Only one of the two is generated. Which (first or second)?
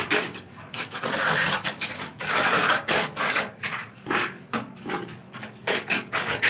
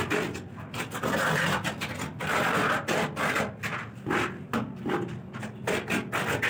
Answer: first